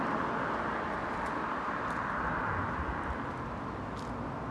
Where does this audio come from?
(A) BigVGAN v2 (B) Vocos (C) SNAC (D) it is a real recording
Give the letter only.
D